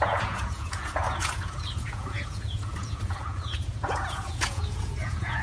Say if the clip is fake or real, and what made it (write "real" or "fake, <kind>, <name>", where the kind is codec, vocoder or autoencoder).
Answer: fake, vocoder, Vocos